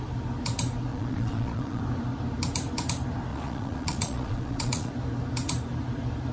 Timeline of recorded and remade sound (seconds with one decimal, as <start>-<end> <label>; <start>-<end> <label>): 0.0-0.9 recorded; 0.9-1.8 remade; 1.8-3.3 recorded; 3.3-4.9 remade; 4.9-6.3 recorded